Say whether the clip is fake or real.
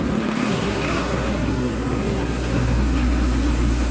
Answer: fake